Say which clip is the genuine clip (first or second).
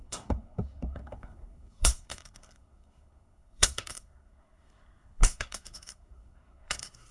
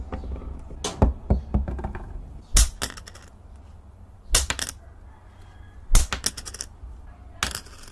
second